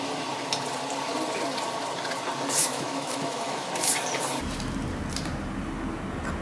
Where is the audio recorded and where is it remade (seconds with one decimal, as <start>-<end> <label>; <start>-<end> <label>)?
0.0-2.6 recorded; 2.6-3.7 remade; 3.7-6.4 recorded